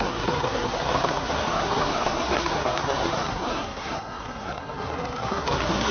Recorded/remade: remade